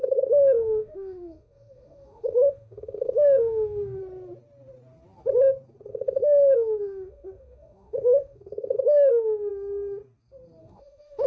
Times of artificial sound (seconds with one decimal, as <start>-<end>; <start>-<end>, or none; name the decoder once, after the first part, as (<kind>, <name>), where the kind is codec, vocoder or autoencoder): 0.0-4.0 (autoencoder, DAC-VAE); 5.9-9.5; 10.6-11.3